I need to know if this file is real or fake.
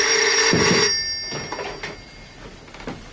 real